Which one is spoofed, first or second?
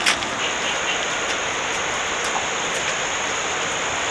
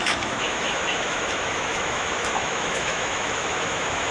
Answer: second